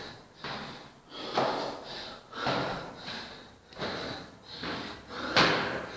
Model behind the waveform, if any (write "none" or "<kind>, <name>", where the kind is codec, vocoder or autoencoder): none